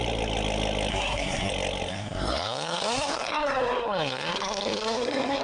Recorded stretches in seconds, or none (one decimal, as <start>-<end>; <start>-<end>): 0.0-0.9; 1.5-1.9